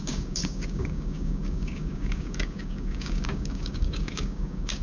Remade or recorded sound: remade